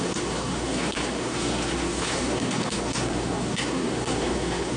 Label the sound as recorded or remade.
remade